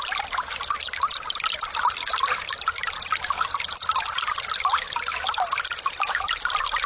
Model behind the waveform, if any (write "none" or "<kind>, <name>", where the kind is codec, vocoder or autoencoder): none